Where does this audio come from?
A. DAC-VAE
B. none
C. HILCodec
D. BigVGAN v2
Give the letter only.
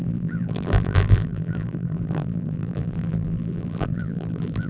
D